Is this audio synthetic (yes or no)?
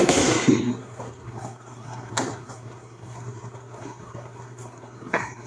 yes